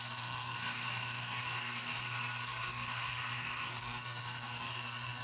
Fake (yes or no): yes